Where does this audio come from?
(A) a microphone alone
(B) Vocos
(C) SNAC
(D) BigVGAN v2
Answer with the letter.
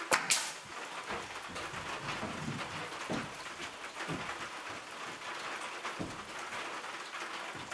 A